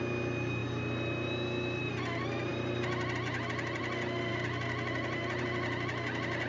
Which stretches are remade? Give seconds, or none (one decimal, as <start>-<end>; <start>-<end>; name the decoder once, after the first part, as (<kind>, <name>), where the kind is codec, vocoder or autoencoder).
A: none